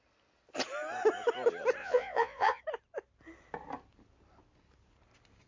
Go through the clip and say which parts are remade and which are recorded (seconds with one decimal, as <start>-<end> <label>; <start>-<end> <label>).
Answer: 0.0-1.8 recorded; 1.8-2.6 remade; 2.6-5.5 recorded